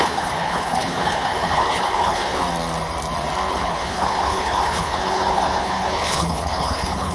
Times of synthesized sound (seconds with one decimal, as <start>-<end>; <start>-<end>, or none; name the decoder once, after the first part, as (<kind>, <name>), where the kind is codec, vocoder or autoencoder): 0.0-2.4 (codec, HILCodec); 3.5-7.1